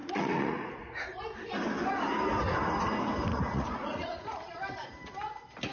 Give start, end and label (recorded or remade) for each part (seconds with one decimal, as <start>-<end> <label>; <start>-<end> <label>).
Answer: 0.0-1.2 remade; 1.2-3.3 recorded; 3.3-4.5 remade; 4.5-5.7 recorded